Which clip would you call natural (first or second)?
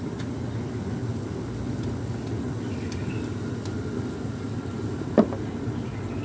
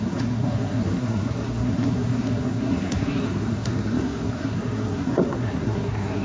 first